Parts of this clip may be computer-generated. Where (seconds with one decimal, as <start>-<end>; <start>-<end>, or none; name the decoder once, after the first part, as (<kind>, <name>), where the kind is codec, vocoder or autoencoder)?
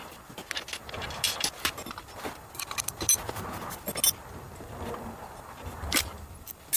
none